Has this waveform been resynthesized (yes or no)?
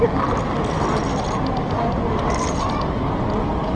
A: no